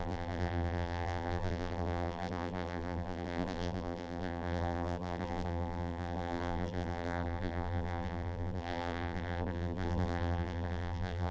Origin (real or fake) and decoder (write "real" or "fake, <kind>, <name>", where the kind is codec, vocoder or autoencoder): fake, vocoder, BigVGAN v2